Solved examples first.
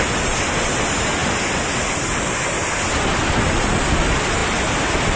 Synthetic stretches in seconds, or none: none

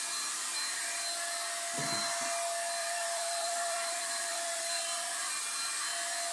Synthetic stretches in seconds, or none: 2.8-5.3

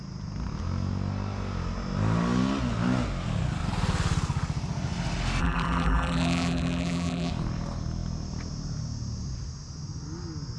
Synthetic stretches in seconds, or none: 5.4-7.3

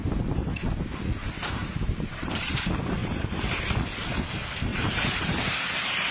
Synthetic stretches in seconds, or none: 1.6-2.6; 3.0-3.6; 4.7-6.1

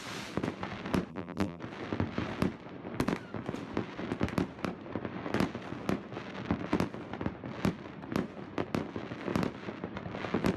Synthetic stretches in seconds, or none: 1.1-1.6

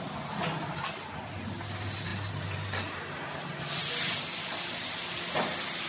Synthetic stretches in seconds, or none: 2.1-2.8

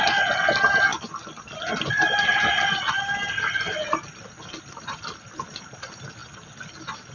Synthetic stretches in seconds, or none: 0.9-5.0